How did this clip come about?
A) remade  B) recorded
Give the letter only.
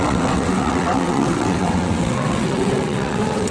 A